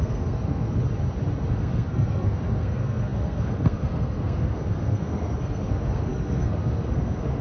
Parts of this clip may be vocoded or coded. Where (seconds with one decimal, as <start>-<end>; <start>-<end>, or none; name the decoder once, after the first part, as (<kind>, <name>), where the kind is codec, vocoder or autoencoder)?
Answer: 0.0-0.8 (codec, SNAC); 1.5-7.4